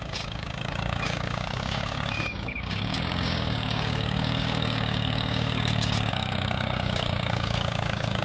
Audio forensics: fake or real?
fake